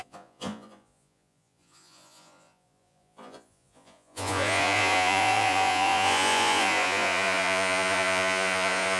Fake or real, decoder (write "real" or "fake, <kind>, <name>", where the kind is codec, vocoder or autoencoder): fake, vocoder, Vocos